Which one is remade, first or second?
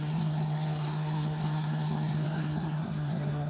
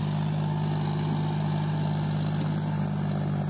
first